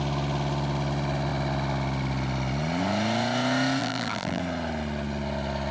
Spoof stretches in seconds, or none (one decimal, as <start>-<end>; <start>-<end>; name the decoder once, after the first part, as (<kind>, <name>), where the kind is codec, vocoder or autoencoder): 3.8-4.4 (vocoder, BigVGAN v2)

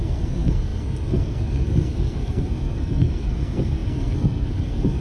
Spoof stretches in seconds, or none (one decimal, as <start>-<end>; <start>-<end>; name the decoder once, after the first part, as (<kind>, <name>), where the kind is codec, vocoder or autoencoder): 0.0-5.0 (codec, SNAC)

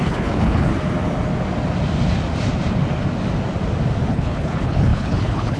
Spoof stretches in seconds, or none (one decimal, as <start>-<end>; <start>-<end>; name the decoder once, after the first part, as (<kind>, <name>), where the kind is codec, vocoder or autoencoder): 0.0-0.7 (codec, HILCodec); 4.1-5.6

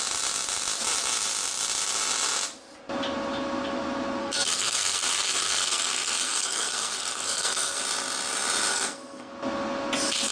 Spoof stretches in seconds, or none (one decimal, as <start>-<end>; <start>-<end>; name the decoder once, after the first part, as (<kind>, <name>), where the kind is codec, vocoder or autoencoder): 4.2-7.8 (codec, SNAC); 8.7-9.3

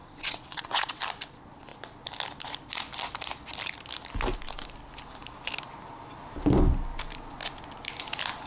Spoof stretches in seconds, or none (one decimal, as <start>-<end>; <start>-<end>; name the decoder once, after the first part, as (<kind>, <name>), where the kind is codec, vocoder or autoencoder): 0.0-1.0 (vocoder, WaveNeXt)